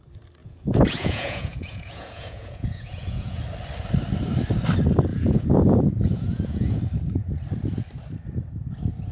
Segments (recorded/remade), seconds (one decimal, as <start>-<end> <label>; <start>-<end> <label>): 0.0-0.4 recorded; 0.4-3.4 remade; 3.4-5.1 recorded; 5.1-6.8 remade; 6.8-9.1 recorded